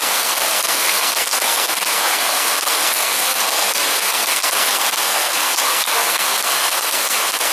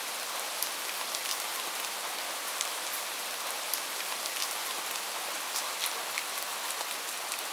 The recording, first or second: second